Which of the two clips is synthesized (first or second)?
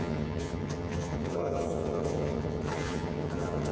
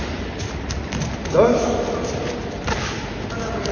first